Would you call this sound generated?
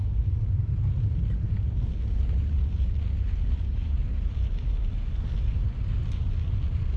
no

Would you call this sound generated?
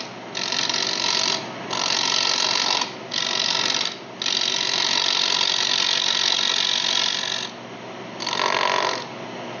no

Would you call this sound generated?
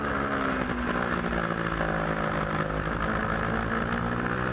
no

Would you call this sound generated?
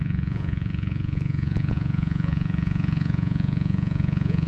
yes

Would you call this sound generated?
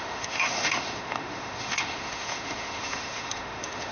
yes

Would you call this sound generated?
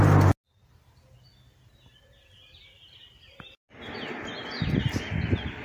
no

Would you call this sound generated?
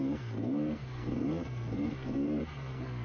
yes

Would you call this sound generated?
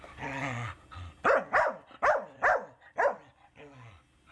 no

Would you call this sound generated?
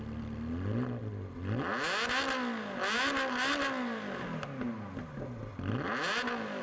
no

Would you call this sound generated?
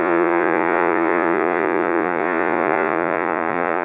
yes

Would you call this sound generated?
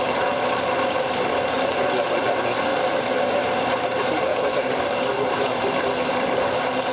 yes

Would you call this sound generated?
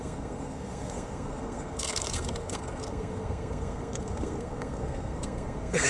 yes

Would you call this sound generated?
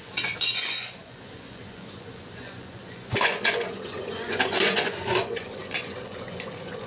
yes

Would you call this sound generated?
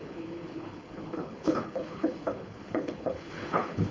yes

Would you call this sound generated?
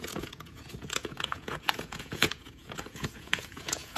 yes